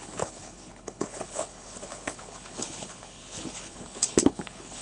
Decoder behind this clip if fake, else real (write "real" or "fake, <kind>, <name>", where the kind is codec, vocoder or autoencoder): fake, codec, HILCodec